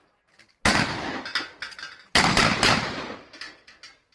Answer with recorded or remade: recorded